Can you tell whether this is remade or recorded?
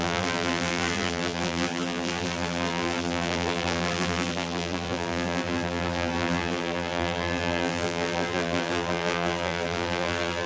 remade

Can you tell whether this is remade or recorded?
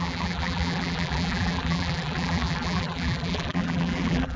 remade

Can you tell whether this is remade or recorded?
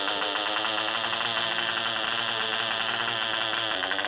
recorded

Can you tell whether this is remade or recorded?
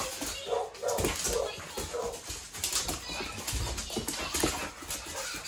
recorded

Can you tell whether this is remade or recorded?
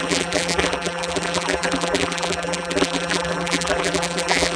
remade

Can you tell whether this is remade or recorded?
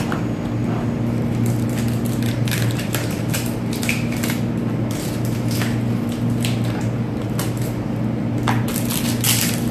remade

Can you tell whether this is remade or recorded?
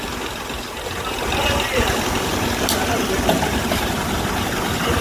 remade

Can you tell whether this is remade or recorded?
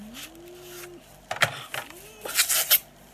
recorded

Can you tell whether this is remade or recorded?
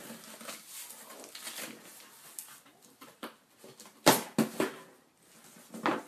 recorded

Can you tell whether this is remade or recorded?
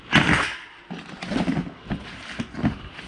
recorded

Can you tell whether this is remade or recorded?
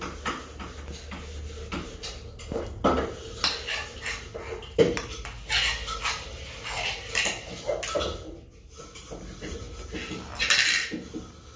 recorded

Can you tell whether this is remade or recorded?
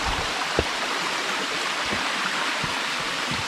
recorded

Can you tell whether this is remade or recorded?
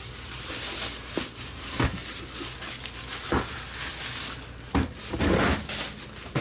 recorded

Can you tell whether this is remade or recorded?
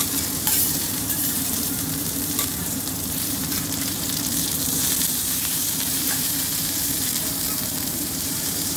remade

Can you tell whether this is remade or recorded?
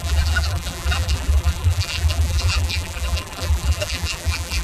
remade